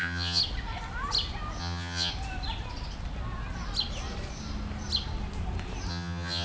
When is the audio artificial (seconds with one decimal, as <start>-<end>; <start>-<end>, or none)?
0.0-0.4; 1.6-2.1; 5.9-6.4